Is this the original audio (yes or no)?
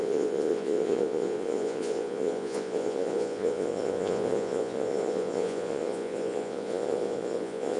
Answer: no